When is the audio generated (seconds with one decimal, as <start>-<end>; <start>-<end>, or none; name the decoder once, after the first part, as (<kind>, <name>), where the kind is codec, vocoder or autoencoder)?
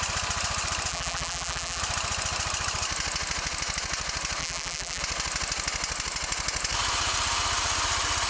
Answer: 0.9-1.8 (vocoder, BigVGAN v2); 4.4-5.0